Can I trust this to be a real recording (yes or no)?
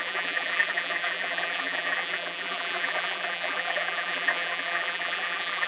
no